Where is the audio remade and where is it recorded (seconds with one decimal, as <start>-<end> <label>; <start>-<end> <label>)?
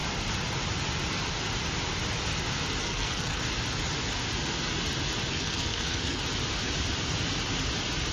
0.0-2.8 recorded; 2.8-3.4 remade; 3.4-5.3 recorded; 5.3-6.2 remade; 6.2-8.1 recorded